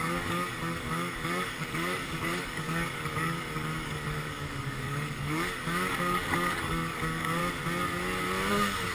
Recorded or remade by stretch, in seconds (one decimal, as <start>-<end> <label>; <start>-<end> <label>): 0.0-7.4 remade; 7.4-8.5 recorded; 8.5-8.9 remade

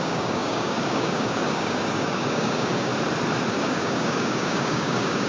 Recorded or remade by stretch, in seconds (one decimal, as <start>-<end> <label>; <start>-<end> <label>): 0.0-2.9 remade; 2.9-3.5 recorded; 3.5-5.3 remade

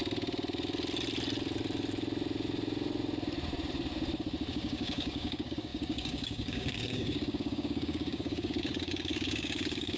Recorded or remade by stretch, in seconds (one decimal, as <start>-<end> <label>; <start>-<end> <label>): 0.0-4.5 recorded; 4.5-10.0 remade

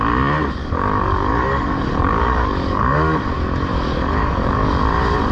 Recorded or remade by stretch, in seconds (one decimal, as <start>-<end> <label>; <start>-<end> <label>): 0.0-0.6 recorded; 0.6-3.3 remade; 3.3-3.7 recorded; 3.7-4.7 remade; 4.7-5.3 recorded

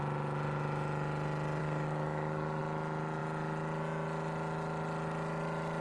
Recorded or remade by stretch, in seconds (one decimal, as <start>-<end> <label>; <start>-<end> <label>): 0.0-1.6 recorded; 1.6-2.6 remade; 2.6-5.8 recorded

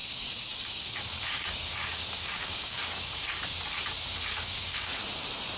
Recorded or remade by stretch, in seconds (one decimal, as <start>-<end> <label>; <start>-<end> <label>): 0.0-3.4 remade; 3.4-4.3 recorded; 4.3-5.0 remade; 5.0-5.6 recorded

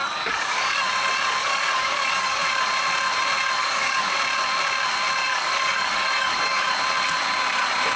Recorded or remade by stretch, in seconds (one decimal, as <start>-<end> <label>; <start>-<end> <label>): 0.0-0.8 remade; 0.8-1.4 recorded; 1.4-2.4 remade; 2.4-3.6 recorded; 3.6-4.1 remade; 4.1-5.2 recorded; 5.2-6.7 remade; 6.7-8.0 recorded